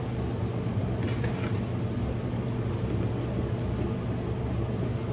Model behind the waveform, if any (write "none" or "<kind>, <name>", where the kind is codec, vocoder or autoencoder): none